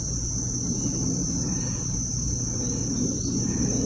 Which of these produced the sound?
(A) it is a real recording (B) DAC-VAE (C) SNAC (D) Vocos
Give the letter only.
A